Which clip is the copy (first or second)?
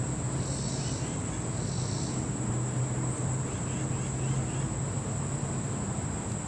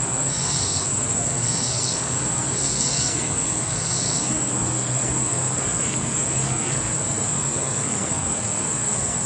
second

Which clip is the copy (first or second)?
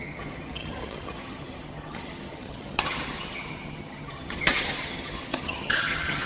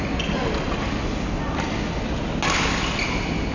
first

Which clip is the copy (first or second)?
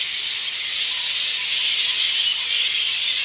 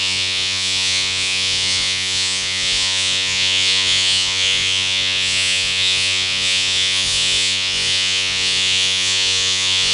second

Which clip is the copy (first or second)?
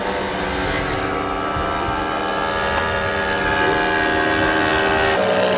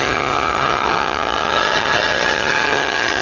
second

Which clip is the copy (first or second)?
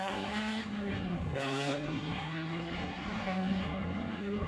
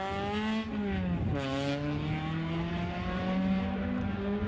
first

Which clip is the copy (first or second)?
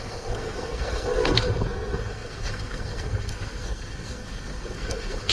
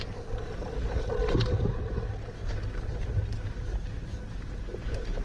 first